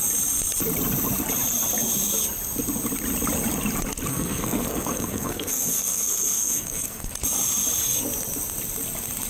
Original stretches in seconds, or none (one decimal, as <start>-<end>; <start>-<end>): 0.0-4.1; 7.1-9.3